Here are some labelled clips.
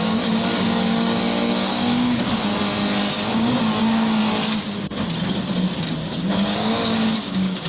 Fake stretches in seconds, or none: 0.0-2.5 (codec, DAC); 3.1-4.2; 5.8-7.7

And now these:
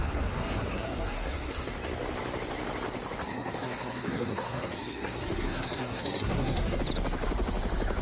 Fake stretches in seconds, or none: 0.0-1.7 (codec, SNAC); 3.2-6.8

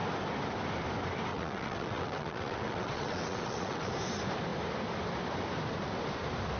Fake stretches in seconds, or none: 1.3-3.9 (vocoder, WaveNeXt)

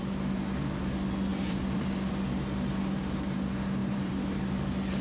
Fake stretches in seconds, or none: 1.3-2.1 (vocoder, BigVGAN v2); 3.8-4.5

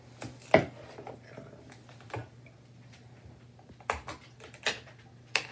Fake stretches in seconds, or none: none

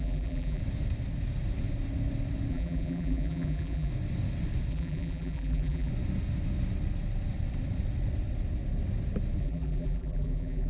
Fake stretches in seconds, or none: 0.0-0.6 (vocoder, BigVGAN v2); 2.5-3.9; 4.7-5.9; 9.4-10.7